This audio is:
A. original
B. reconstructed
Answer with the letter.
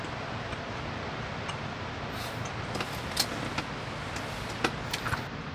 A